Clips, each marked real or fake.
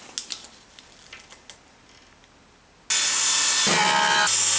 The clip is real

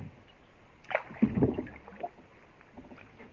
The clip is real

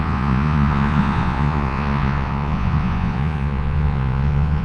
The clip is fake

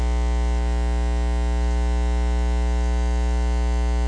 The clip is real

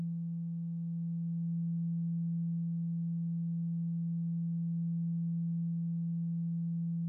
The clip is real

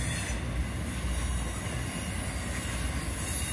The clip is real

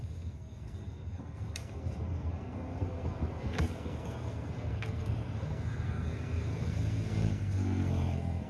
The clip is fake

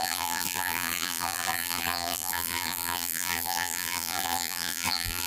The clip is fake